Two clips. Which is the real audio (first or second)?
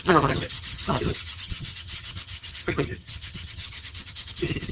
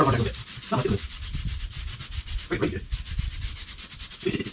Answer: second